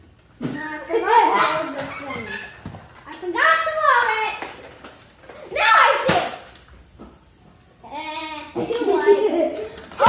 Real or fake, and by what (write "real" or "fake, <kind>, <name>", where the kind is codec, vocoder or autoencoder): real